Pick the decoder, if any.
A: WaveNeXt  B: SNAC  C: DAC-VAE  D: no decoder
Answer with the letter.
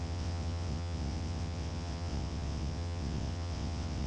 A